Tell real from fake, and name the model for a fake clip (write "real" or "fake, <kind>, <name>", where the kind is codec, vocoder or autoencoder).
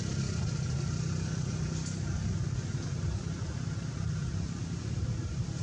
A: real